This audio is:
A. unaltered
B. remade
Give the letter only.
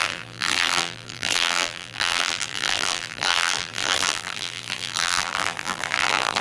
B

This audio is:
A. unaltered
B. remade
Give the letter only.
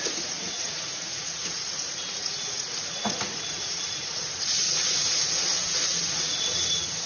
B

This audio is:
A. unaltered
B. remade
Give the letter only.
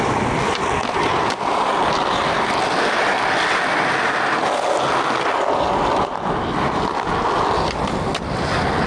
A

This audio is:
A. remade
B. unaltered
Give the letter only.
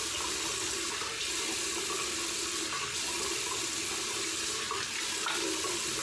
B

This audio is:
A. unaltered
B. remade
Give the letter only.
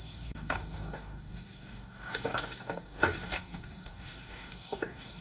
B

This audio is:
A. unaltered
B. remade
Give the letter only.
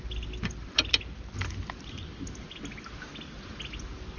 A